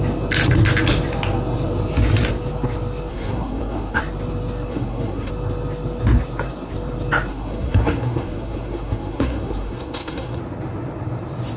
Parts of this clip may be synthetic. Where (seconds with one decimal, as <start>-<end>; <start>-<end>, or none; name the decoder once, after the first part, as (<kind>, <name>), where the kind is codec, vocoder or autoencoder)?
3.1-4.0 (codec, SNAC); 4.7-5.3; 7.3-10.4